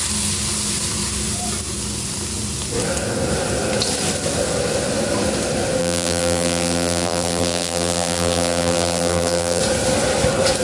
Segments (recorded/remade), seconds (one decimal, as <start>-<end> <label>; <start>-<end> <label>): 0.0-5.8 recorded; 5.8-9.6 remade; 9.6-10.6 recorded